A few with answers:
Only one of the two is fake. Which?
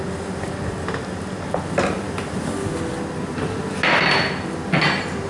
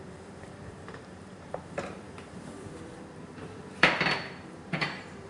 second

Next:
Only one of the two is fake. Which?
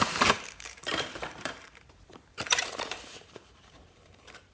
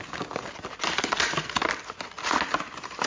first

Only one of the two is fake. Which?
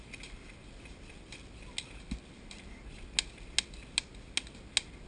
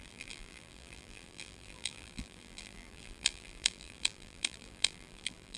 second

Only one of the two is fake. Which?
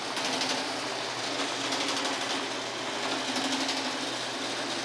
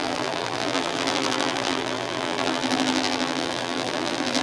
second